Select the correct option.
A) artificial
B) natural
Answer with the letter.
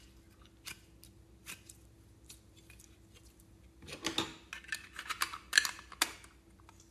B